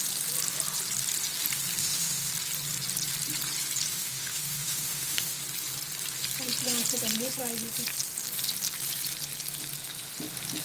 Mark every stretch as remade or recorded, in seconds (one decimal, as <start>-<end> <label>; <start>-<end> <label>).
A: 0.0-1.8 recorded; 1.8-2.3 remade; 2.3-3.9 recorded; 3.9-5.4 remade; 5.4-10.6 recorded